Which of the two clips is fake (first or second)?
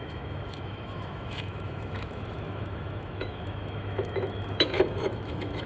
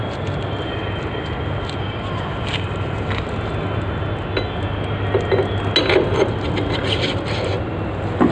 first